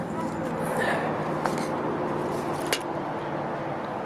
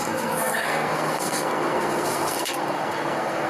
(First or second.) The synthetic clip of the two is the second